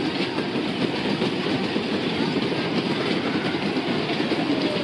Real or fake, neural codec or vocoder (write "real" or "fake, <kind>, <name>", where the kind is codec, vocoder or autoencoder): real